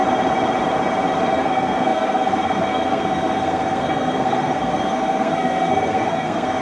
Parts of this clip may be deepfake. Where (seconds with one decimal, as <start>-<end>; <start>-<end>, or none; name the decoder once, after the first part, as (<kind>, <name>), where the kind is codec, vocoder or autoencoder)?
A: 1.3-6.6 (codec, SNAC)